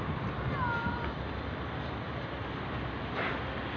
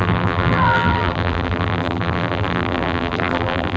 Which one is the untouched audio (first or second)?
first